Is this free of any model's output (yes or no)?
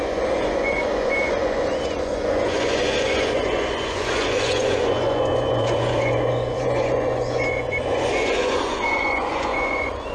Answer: no